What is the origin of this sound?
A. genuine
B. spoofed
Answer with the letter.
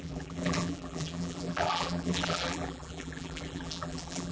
B